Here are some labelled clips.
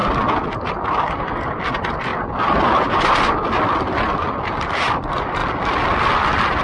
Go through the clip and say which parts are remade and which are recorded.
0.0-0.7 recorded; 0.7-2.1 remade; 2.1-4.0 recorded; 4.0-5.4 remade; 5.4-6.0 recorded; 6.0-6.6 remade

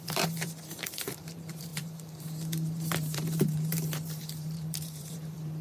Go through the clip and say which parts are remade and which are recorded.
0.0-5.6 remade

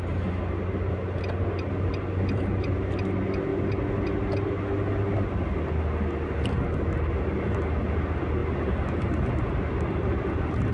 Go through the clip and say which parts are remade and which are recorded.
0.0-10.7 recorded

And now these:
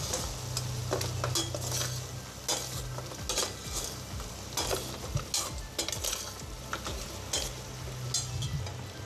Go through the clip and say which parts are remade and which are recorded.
0.0-9.1 recorded

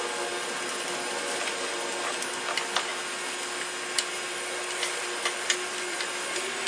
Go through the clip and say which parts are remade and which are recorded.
0.0-6.7 recorded